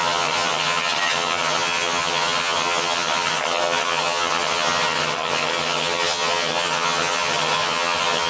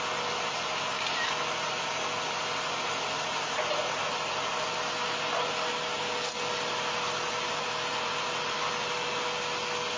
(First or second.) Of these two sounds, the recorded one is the second